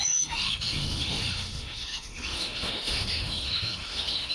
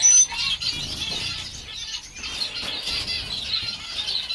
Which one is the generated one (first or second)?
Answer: first